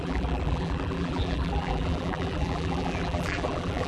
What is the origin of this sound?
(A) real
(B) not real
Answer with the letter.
B